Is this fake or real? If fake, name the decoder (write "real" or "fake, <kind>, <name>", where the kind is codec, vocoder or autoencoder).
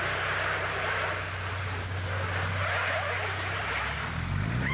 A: real